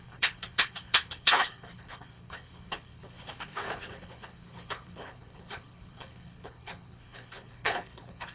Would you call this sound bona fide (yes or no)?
no